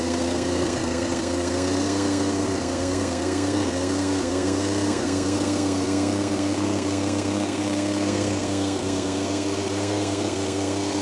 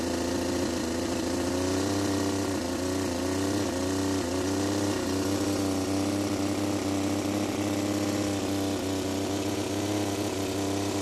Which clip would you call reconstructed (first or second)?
first